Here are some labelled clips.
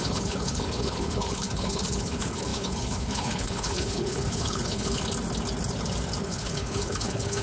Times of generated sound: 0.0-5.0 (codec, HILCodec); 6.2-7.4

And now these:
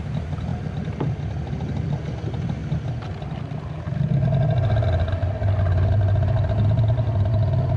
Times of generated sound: none

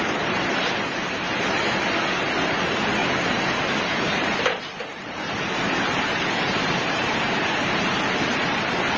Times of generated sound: none

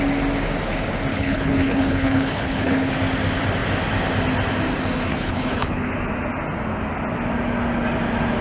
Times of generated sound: 1.1-2.9 (codec, HILCodec); 5.1-5.9

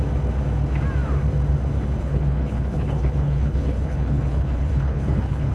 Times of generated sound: 2.0-5.5 (codec, HILCodec)

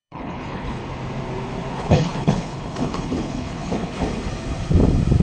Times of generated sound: 0.0-0.8 (codec, HILCodec); 1.7-4.0

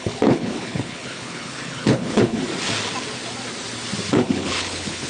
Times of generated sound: 0.0-2.4 (codec, HILCodec); 4.1-5.1